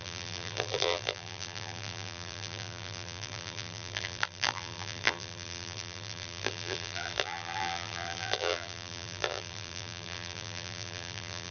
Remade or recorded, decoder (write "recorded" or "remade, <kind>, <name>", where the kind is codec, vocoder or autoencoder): remade, vocoder, BigVGAN v2